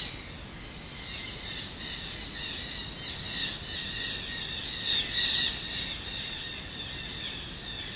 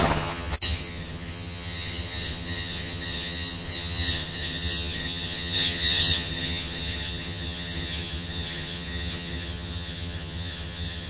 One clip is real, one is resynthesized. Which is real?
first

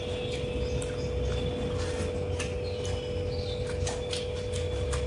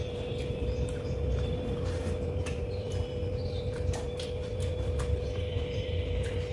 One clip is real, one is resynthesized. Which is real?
first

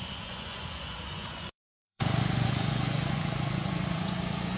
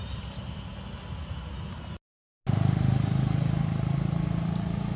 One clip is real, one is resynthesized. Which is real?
second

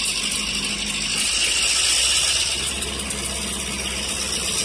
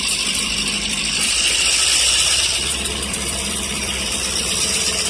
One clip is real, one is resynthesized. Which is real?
first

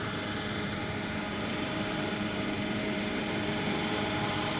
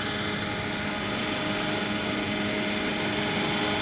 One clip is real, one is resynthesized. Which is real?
second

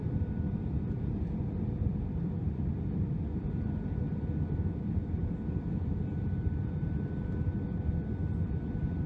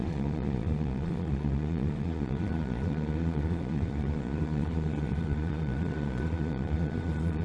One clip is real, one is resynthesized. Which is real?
first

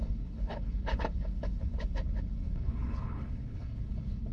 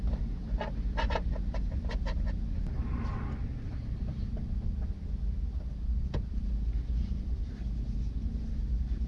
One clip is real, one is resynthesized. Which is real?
second